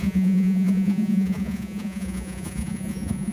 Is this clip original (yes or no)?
no